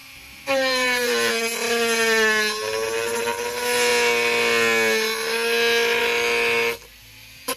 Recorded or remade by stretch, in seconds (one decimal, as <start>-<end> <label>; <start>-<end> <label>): 0.0-1.3 remade; 1.3-7.6 recorded